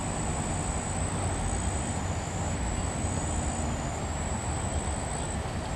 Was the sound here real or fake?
real